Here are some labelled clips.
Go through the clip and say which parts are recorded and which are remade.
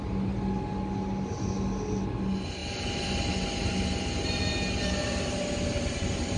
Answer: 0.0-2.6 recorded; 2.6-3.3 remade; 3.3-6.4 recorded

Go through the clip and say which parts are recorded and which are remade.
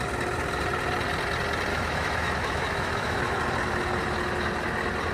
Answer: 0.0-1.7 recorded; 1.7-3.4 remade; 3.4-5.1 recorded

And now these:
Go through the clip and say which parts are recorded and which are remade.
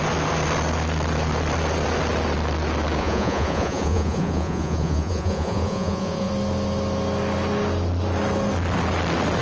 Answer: 0.0-3.0 recorded; 3.0-6.3 remade; 6.3-9.4 recorded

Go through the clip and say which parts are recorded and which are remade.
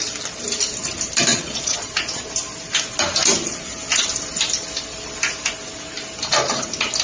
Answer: 0.0-1.3 recorded; 1.3-2.3 remade; 2.3-7.0 recorded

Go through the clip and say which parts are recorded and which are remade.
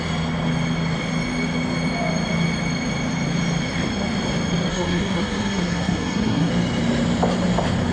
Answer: 0.0-4.7 recorded; 4.7-6.5 remade; 6.5-7.9 recorded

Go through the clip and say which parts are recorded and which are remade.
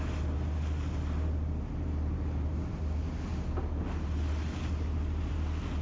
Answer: 0.0-5.8 recorded